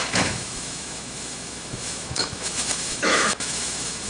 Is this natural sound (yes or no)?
no